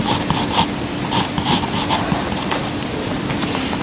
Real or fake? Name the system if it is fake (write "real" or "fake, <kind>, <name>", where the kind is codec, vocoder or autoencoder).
real